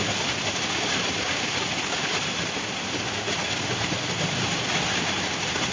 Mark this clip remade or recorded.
recorded